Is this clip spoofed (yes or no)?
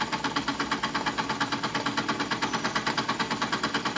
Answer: no